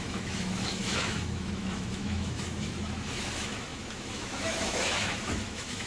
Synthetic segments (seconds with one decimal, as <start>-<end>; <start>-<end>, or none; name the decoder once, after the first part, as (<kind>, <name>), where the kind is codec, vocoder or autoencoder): 0.0-5.9 (autoencoder, DAC-VAE)